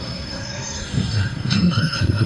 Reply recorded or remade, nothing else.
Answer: remade